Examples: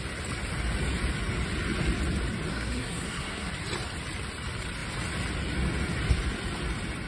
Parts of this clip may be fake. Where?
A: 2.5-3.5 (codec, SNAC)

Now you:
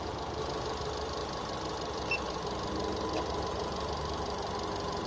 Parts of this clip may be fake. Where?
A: none

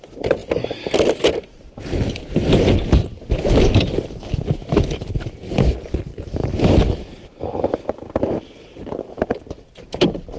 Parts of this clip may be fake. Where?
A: 4.6-6.0 (vocoder, BigVGAN v2)

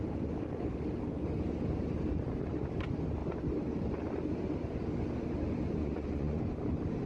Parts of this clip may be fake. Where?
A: 5.8-6.4 (vocoder, Vocos)

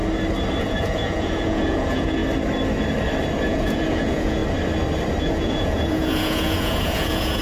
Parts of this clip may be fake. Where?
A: 0.6-2.2 (vocoder, Vocos); 3.4-4.4; 5.2-7.4

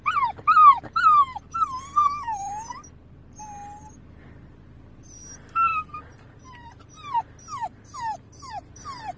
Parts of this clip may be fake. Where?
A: none

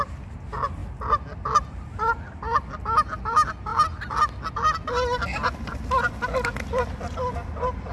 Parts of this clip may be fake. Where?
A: none

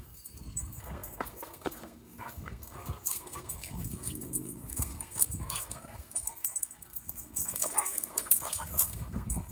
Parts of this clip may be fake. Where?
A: 0.0-9.5 (codec, SNAC)